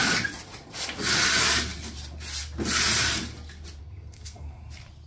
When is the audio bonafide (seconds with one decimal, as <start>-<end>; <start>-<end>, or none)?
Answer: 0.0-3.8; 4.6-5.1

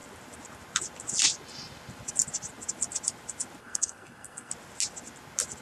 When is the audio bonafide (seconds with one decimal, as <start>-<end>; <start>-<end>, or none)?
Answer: 0.0-3.6; 4.5-5.6

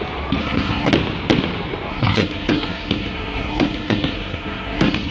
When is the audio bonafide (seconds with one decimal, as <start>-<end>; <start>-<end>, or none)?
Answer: 0.0-0.4; 0.9-1.9